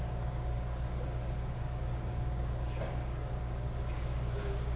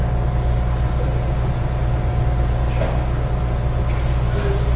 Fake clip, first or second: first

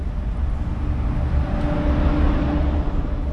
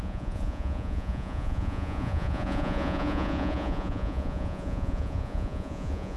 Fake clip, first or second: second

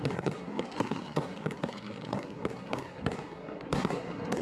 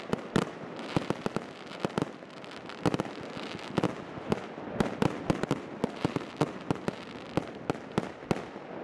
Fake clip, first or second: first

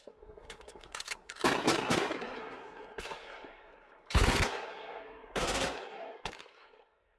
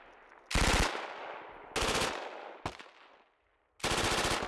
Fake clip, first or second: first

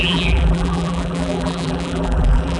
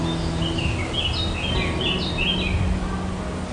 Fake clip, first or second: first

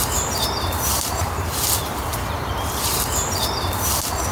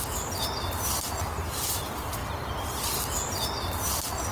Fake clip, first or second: first